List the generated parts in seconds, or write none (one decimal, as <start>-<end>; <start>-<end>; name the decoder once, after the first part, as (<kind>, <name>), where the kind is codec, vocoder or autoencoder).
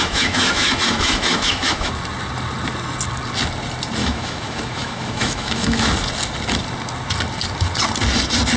0.0-1.9 (autoencoder, DAC-VAE); 4.0-5.9